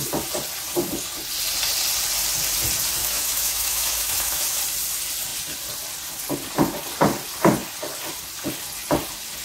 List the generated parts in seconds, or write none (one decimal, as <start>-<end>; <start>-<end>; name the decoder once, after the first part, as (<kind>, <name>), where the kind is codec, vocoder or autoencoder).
3.0-4.6 (autoencoder, DAC-VAE)